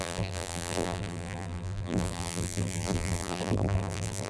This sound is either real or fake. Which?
fake